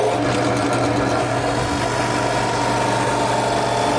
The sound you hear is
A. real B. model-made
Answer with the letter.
A